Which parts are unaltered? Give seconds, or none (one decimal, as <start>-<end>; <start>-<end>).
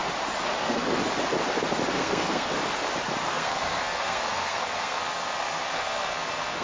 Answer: 0.0-0.6; 1.0-1.9; 2.5-3.2